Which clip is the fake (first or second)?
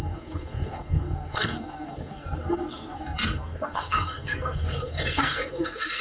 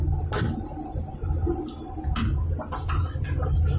first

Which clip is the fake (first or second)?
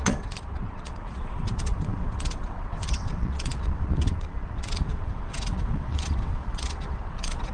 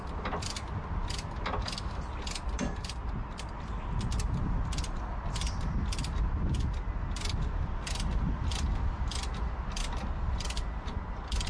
first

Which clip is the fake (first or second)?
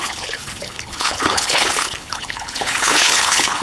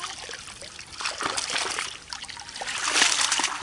first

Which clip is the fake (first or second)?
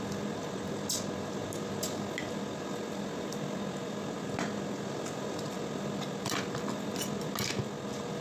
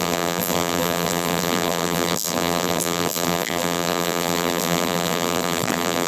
second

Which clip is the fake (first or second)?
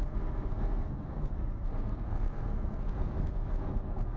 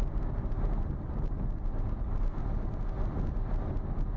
first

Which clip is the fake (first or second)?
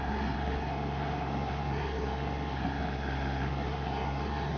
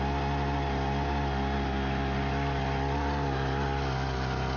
first